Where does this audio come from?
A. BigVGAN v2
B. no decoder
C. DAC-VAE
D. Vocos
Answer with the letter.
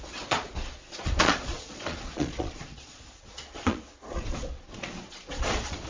D